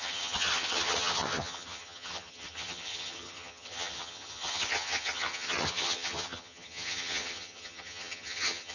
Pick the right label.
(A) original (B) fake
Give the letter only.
B